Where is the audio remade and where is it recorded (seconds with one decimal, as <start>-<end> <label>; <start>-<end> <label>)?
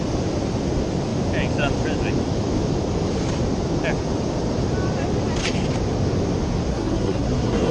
0.0-6.7 recorded; 6.7-7.7 remade